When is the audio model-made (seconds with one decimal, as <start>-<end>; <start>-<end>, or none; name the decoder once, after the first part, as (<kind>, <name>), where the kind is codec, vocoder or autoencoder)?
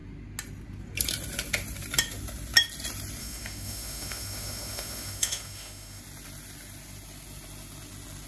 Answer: 3.2-6.0 (autoencoder, DAC-VAE)